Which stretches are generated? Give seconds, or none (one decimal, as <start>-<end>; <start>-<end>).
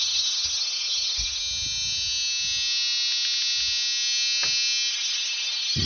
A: 0.0-1.4; 4.9-5.9